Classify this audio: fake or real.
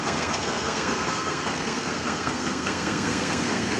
fake